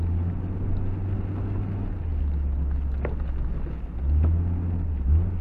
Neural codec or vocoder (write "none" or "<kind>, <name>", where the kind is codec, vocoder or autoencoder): none